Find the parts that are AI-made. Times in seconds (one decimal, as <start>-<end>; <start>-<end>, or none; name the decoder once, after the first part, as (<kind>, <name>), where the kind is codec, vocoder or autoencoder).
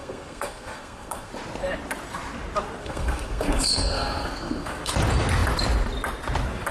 0.0-1.3 (codec, SNAC); 2.8-4.9